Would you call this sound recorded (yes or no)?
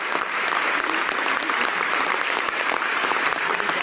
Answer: no